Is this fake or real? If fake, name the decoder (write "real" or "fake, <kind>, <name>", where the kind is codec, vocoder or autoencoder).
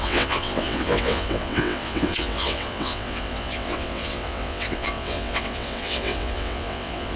fake, vocoder, WaveNeXt